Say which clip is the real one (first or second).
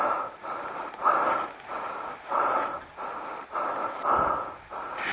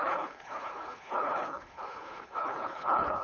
first